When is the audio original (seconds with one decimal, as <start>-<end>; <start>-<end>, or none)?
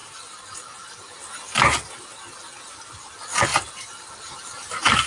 0.0-3.5